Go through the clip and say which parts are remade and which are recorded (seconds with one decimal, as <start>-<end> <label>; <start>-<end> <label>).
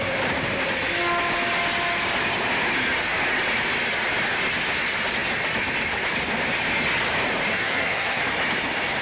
0.0-7.5 recorded; 7.5-8.2 remade; 8.2-9.0 recorded